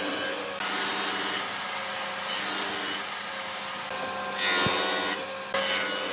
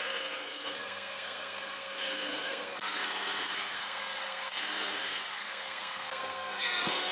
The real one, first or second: first